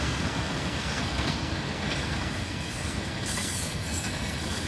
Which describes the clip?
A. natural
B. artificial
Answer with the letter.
B